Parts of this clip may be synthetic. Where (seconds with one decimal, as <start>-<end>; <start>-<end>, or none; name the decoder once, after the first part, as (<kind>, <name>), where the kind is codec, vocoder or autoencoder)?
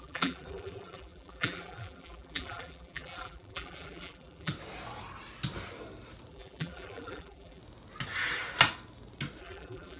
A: 0.0-4.5 (vocoder, BigVGAN v2); 6.3-7.6; 9.4-10.0